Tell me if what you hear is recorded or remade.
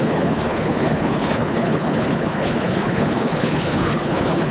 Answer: remade